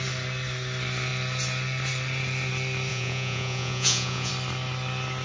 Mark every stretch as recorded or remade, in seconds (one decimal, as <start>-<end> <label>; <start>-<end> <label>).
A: 0.0-2.9 recorded; 2.9-4.3 remade; 4.3-5.2 recorded